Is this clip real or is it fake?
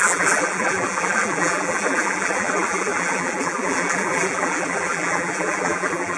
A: fake